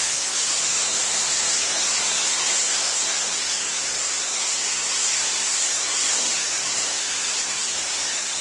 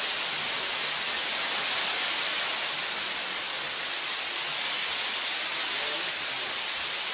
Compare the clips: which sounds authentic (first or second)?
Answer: second